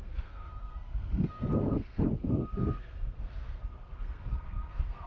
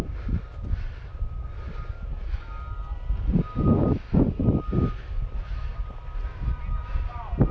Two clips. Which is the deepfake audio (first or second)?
first